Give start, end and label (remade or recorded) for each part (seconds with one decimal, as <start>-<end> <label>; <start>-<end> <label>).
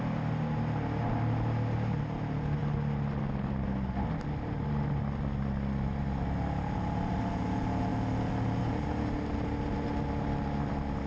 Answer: 0.0-11.1 recorded